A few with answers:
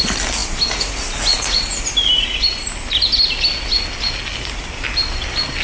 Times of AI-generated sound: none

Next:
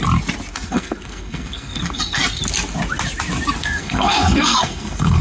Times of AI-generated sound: 0.5-2.4; 3.6-5.2

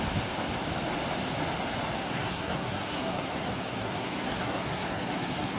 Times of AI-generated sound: 2.0-5.6

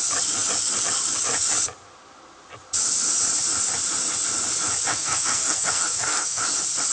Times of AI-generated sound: 4.9-6.4

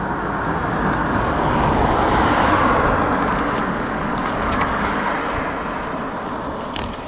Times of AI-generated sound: 1.0-2.1; 3.6-5.1

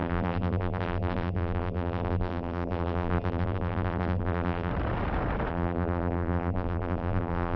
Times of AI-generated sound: 0.0-4.7; 5.5-7.6

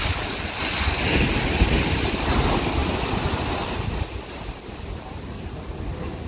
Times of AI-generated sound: none

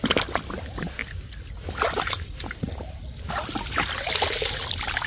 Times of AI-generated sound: none